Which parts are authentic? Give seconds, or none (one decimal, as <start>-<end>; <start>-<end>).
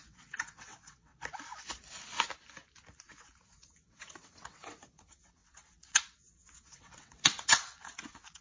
1.1-3.2